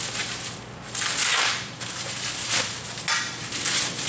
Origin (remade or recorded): recorded